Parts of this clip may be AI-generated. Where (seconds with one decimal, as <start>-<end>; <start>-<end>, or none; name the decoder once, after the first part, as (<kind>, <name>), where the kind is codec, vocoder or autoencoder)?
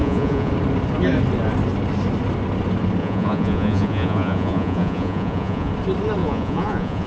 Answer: 0.0-0.5 (vocoder, Vocos); 3.0-5.7; 6.2-7.1